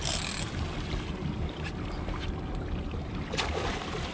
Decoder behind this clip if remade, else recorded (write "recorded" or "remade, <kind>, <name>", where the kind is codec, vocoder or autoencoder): recorded